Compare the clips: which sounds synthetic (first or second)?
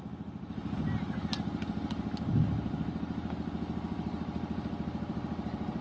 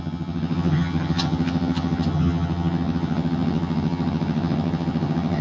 second